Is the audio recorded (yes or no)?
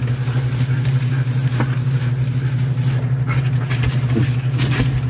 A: yes